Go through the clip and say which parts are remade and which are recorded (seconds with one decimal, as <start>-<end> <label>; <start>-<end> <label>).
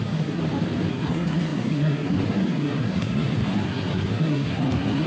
0.0-0.4 remade; 0.4-0.9 recorded; 0.9-5.1 remade